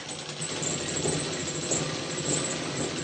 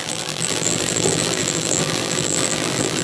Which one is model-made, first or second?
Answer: second